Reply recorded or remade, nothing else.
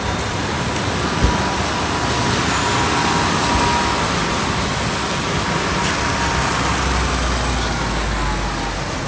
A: recorded